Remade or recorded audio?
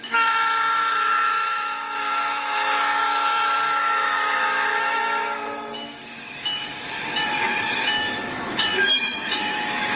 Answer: remade